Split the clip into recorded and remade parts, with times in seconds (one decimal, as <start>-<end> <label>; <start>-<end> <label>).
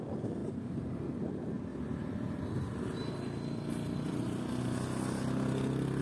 0.0-0.4 recorded; 0.4-0.9 remade; 0.9-1.7 recorded; 1.7-2.4 remade; 2.4-6.0 recorded